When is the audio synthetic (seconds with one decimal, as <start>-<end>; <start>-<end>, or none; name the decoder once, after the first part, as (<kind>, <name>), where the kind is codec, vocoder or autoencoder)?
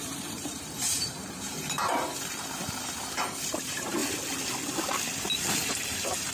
0.0-4.0 (vocoder, BigVGAN v2); 5.5-6.3